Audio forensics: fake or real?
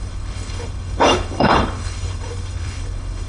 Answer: fake